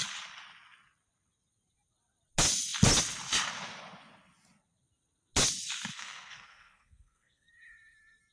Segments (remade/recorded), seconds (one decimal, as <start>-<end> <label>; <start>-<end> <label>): 0.0-5.9 recorded; 5.9-7.5 remade; 7.5-8.3 recorded